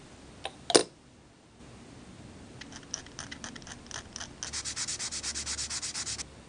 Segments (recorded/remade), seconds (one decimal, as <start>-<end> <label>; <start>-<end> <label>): 0.0-6.5 recorded